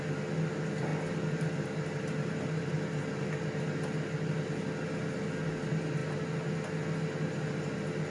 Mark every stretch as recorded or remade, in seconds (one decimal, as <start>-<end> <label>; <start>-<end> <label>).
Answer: 0.0-8.1 recorded